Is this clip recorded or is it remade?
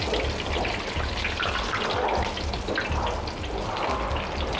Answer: recorded